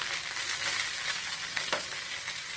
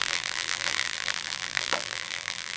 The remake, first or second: second